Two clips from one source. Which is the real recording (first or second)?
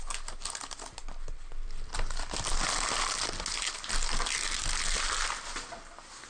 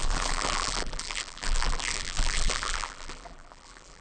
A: first